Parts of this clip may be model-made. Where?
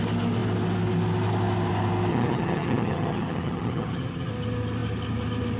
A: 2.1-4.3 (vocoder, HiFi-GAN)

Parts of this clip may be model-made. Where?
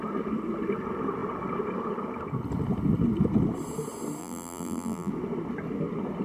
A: 4.2-5.1 (vocoder, BigVGAN v2)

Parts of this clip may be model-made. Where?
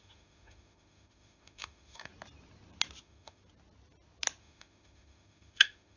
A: 0.0-2.1 (autoencoder, DAC-VAE); 3.0-3.4; 4.4-6.0